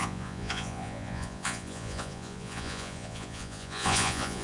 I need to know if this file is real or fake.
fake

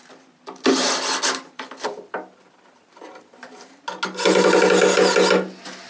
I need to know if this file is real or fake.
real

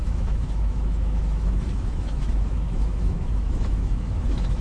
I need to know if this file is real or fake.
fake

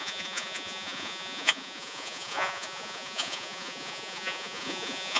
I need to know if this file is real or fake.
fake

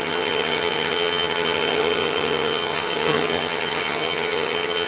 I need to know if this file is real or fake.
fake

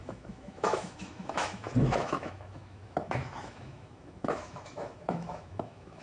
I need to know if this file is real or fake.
fake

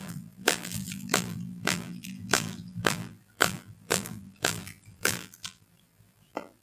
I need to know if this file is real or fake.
fake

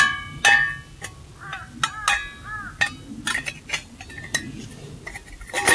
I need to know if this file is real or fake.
real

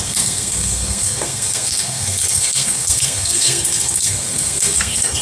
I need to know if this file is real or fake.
fake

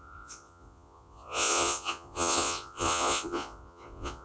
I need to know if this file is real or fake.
fake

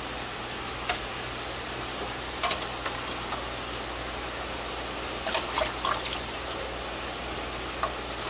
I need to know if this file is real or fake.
real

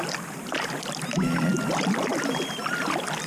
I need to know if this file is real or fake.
real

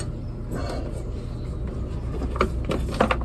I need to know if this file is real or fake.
real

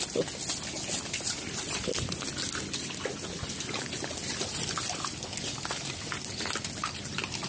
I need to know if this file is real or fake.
real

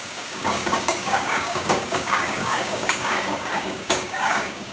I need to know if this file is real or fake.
fake